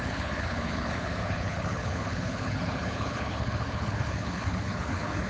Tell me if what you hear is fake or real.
fake